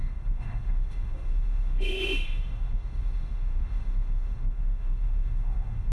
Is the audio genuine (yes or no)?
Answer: no